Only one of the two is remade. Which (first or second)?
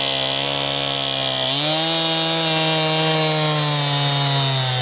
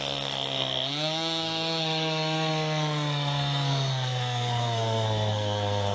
second